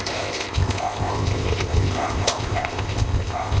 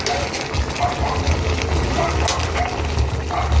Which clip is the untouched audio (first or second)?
second